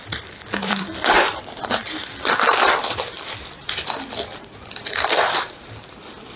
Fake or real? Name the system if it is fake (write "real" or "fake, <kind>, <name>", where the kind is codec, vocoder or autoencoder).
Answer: fake, vocoder, BigVGAN v2